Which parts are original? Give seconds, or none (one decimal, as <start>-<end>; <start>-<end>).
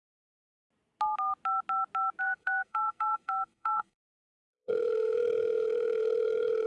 0.0-2.2